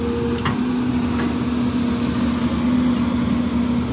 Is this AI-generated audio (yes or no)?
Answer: no